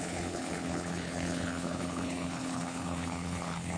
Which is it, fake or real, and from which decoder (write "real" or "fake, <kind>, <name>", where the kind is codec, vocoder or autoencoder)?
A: fake, codec, HILCodec